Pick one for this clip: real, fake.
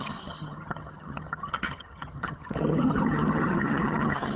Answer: fake